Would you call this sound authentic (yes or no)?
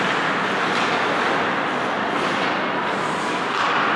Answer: yes